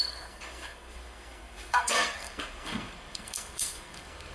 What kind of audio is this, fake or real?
fake